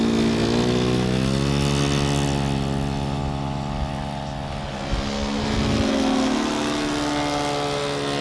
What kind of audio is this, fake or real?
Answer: real